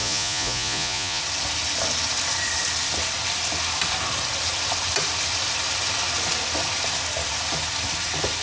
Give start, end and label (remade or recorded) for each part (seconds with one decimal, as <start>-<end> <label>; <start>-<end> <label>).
0.0-1.2 remade; 1.2-8.4 recorded